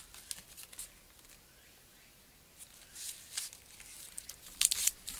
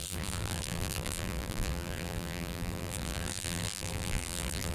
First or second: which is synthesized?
second